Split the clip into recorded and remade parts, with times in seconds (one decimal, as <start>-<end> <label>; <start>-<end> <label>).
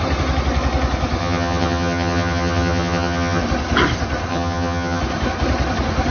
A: 0.0-1.2 recorded; 1.2-3.4 remade; 3.4-4.3 recorded; 4.3-5.0 remade; 5.0-6.1 recorded